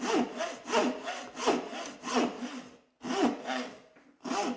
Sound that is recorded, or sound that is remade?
recorded